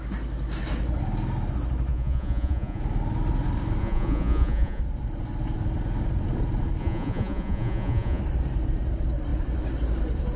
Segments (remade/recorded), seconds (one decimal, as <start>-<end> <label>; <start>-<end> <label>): 0.0-1.9 recorded; 1.9-2.8 remade; 2.8-3.8 recorded; 3.8-4.8 remade; 4.8-6.8 recorded; 6.8-8.2 remade; 8.2-10.4 recorded

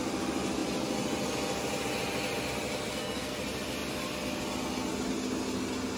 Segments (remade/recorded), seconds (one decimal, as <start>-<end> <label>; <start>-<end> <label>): 0.0-2.9 recorded; 2.9-3.4 remade; 3.4-6.0 recorded